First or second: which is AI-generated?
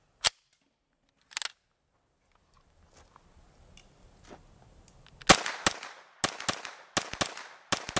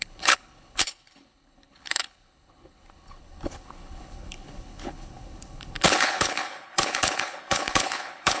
second